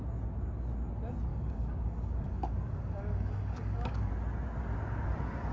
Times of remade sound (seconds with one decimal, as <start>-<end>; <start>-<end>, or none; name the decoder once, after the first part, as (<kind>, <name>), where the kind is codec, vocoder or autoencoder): 1.3-4.1 (codec, DAC)